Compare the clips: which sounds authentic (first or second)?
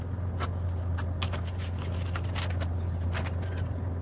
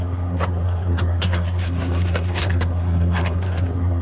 first